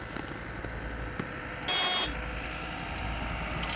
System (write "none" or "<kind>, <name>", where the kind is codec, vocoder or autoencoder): none